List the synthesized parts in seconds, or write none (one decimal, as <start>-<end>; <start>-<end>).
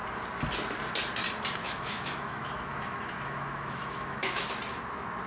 1.6-4.5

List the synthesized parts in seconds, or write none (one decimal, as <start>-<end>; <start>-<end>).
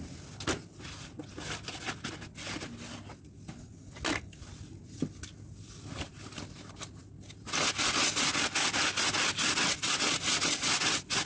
none